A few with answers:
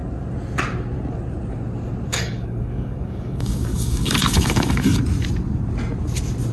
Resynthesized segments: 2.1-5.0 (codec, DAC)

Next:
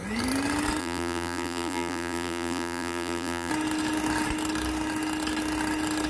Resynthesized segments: 0.8-3.5 (vocoder, BigVGAN v2)

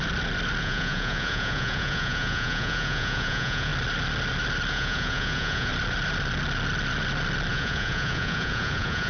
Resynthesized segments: 0.6-3.7 (vocoder, Vocos); 4.7-5.7; 7.5-9.1

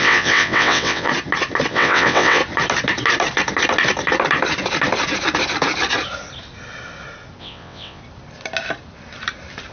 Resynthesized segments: 0.0-1.1 (vocoder, WaveNeXt); 1.7-2.4; 7.4-8.0

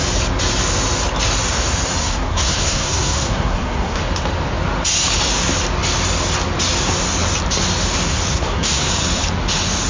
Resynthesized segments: 2.0-4.0 (codec, SNAC); 8.3-8.9